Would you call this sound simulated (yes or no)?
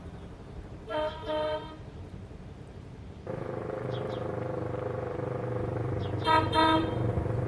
yes